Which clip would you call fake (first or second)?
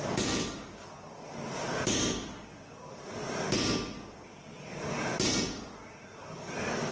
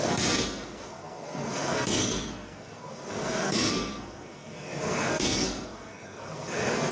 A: second